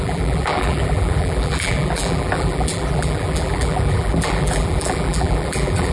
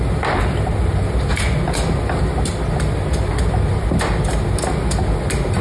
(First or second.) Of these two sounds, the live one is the second